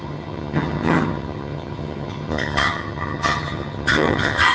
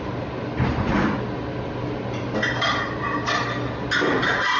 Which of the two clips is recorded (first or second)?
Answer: second